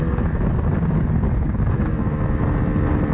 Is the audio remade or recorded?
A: recorded